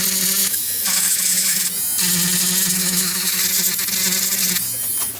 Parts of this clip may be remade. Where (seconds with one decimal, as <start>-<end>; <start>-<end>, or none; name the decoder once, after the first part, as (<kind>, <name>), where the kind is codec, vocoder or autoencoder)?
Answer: 0.4-1.6 (autoencoder, DAC-VAE); 2.8-3.4